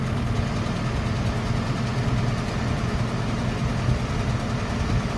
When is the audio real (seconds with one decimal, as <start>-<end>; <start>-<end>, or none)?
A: 0.0-5.2